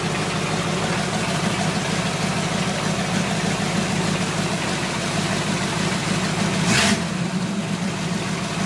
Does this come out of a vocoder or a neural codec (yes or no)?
no